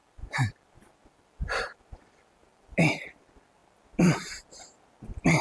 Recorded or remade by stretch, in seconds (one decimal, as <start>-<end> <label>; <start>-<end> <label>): 0.0-3.2 remade; 3.2-3.6 recorded; 3.6-4.6 remade; 4.6-5.4 recorded